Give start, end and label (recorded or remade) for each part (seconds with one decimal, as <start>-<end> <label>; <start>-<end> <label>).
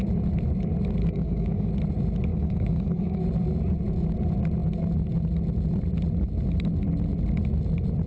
0.0-1.0 recorded; 1.0-1.7 remade; 1.7-2.3 recorded; 2.3-3.2 remade; 3.2-8.1 recorded